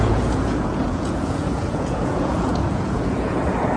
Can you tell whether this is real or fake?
fake